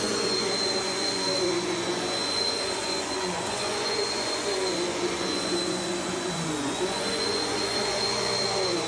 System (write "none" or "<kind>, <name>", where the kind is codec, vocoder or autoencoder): vocoder, Vocos